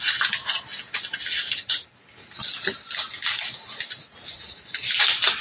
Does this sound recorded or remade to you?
recorded